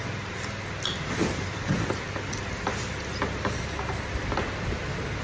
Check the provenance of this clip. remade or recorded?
recorded